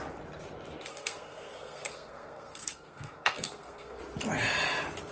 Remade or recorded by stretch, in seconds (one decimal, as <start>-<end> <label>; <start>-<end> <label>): 0.0-0.9 recorded; 0.9-4.0 remade; 4.0-5.1 recorded